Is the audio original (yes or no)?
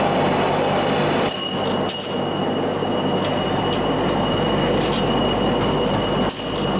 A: yes